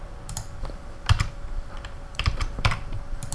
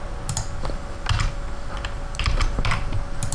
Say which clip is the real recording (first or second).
second